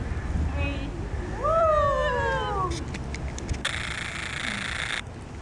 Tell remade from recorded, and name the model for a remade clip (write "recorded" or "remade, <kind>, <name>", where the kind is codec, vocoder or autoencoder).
recorded